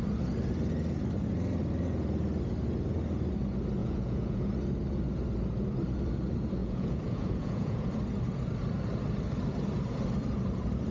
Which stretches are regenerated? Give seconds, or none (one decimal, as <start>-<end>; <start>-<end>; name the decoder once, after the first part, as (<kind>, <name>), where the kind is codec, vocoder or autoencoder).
3.8-4.5 (vocoder, Vocos); 6.6-7.9